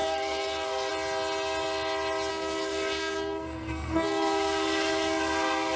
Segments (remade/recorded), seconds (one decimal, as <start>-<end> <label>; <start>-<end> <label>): 0.0-0.9 remade; 0.9-2.3 recorded; 2.3-5.8 remade